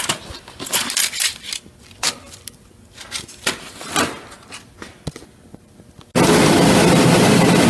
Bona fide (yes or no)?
yes